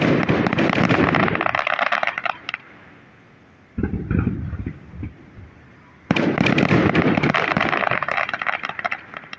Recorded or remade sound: remade